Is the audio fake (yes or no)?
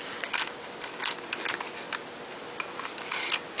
no